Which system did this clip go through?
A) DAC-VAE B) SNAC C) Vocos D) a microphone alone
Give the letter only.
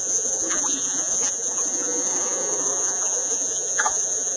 C